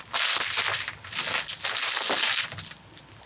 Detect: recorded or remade recorded